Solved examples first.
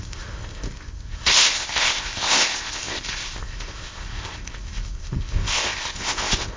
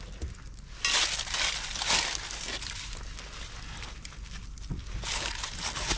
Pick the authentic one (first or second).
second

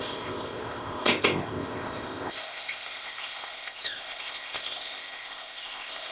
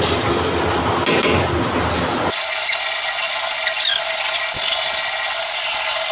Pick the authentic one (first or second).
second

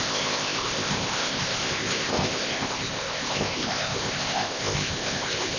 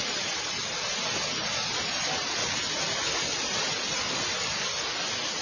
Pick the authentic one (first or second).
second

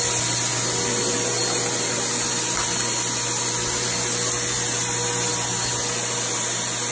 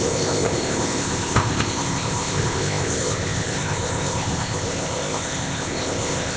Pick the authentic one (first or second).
first